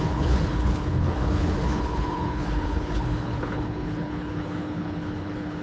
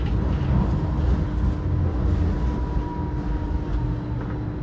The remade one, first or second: first